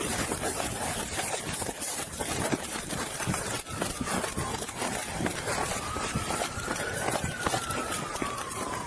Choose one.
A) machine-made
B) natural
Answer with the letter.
B